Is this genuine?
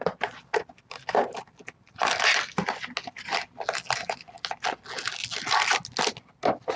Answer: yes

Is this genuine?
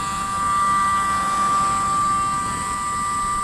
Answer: yes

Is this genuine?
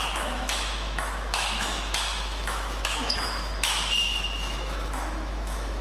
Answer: no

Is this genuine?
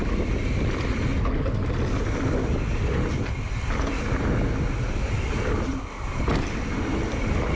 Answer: yes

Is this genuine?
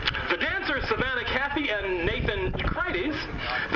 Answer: yes